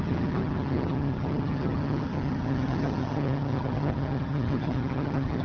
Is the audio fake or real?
fake